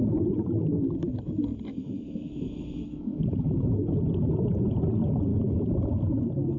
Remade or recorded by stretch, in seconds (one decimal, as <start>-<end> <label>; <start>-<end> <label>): 0.0-1.7 recorded; 1.7-3.9 remade; 3.9-5.3 recorded; 5.3-5.9 remade; 5.9-6.6 recorded